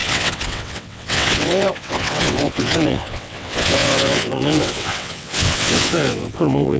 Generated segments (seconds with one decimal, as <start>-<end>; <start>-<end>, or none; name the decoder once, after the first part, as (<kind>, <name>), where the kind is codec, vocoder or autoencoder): 0.0-6.8 (vocoder, WaveNeXt)